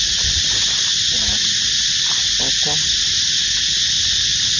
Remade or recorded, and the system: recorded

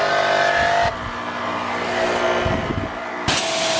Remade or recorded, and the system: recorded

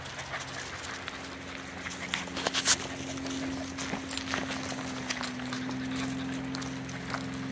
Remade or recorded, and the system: recorded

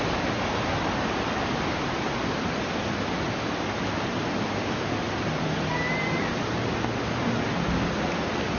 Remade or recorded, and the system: recorded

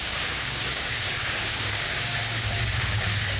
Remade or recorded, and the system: remade, codec, DAC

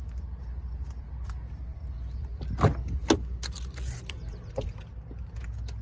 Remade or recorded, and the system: recorded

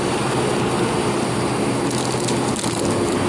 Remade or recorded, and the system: recorded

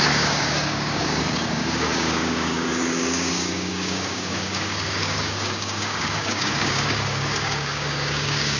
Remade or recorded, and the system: remade, codec, DAC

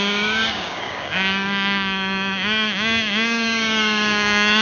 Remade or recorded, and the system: remade, codec, DAC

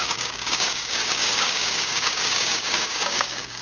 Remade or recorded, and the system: remade, codec, DAC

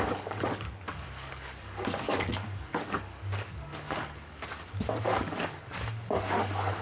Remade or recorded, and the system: remade, codec, DAC